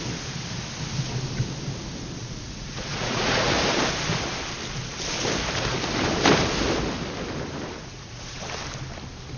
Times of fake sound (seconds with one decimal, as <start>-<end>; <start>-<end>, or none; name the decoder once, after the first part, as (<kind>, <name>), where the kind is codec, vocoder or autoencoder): 2.2-3.6 (vocoder, Vocos); 7.8-8.4